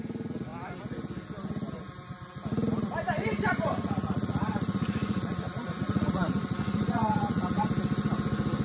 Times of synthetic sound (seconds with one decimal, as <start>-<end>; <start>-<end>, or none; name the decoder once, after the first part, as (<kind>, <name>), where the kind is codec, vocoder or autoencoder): 3.2-7.7 (vocoder, Vocos)